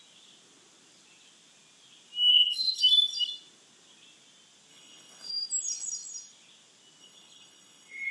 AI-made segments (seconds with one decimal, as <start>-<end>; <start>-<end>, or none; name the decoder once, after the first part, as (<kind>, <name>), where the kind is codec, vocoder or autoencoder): 2.3-2.8 (codec, HILCodec); 4.7-5.3; 7.0-8.1